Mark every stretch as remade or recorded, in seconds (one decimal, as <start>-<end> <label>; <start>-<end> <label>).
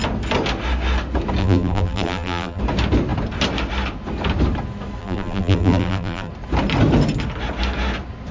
0.0-1.4 recorded; 1.4-2.6 remade; 2.6-5.0 recorded; 5.0-6.3 remade; 6.3-8.3 recorded